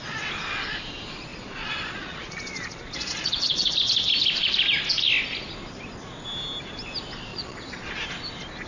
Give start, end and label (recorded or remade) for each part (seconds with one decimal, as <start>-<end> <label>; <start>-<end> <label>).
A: 0.0-1.3 recorded; 1.3-3.7 remade; 3.7-7.3 recorded; 7.3-7.9 remade; 7.9-8.7 recorded